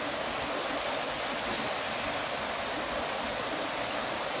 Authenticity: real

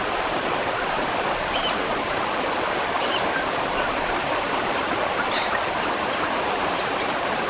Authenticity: fake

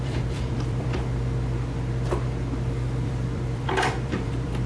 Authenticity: fake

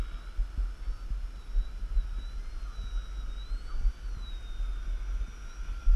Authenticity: real